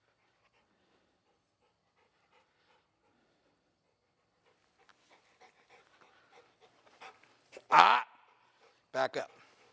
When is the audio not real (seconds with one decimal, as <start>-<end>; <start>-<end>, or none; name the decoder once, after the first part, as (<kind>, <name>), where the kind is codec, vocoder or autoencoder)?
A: 4.9-9.2 (vocoder, BigVGAN v2)